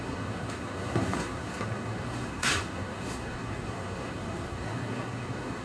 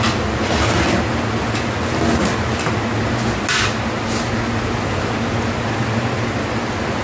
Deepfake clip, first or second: first